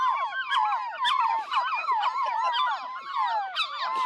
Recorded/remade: recorded